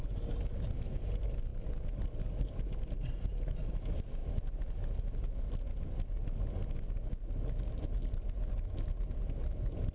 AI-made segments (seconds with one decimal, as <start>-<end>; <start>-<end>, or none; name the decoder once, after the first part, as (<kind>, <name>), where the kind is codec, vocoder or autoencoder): none